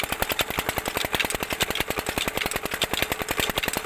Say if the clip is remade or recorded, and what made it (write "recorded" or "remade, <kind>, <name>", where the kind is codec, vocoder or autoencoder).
recorded